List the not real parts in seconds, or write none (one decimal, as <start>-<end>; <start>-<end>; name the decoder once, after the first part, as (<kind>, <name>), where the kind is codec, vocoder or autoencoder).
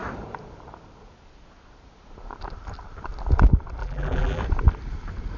3.8-4.4 (vocoder, BigVGAN v2)